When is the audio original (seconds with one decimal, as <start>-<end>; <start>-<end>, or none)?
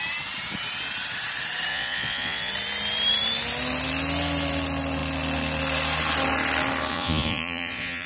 0.0-1.7; 2.5-6.9